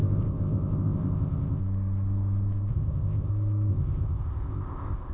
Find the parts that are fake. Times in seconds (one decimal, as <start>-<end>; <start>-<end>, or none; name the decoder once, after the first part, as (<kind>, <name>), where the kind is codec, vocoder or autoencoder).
0.0-1.6 (codec, ZipCodec); 2.7-3.3; 3.7-5.1

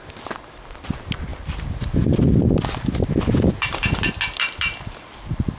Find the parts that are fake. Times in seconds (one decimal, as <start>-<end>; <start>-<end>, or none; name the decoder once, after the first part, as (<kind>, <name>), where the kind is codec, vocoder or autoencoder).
none

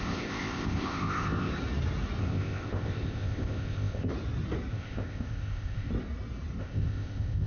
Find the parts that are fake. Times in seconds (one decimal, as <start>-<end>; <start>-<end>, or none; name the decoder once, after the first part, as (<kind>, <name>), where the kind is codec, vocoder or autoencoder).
0.0-1.5 (codec, ZipCodec); 2.2-4.1; 4.7-5.9; 6.6-7.5

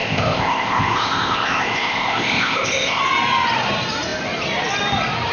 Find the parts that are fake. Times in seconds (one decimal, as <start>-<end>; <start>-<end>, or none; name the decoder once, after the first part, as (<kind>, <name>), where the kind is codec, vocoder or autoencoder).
0.0-3.0 (codec, ZipCodec)

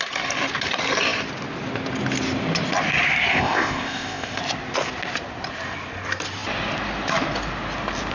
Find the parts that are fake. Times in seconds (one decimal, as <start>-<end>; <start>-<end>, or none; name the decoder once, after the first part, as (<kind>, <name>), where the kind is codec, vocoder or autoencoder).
3.3-4.4 (codec, ZipCodec)

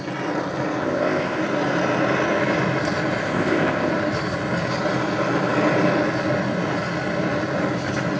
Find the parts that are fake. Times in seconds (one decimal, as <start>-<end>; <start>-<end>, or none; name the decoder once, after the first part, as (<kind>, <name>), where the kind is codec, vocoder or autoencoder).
0.8-1.4 (codec, ZipCodec); 3.2-3.9

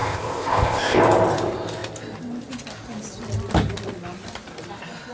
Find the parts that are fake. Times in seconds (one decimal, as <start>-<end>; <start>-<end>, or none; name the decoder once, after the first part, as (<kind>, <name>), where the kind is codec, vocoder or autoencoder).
0.0-1.0 (codec, ZipCodec)